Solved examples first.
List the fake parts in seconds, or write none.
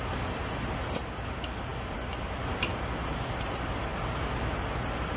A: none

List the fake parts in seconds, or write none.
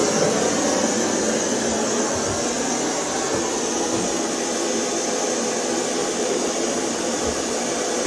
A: 6.0-7.5 (vocoder, BigVGAN v2)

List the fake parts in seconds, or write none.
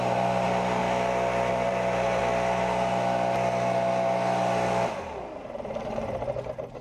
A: 0.0-0.8 (vocoder, BigVGAN v2); 1.5-2.2; 5.6-6.2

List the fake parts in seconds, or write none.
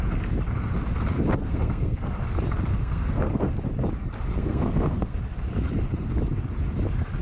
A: 1.4-2.2 (codec, SNAC); 2.7-3.5; 4.4-5.2